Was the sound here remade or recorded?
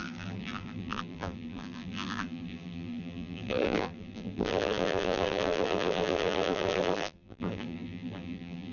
remade